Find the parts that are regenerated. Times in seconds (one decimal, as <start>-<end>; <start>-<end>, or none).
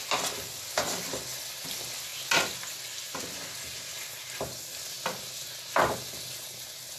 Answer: none